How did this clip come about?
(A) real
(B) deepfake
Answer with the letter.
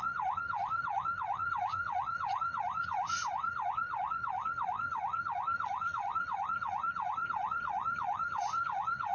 B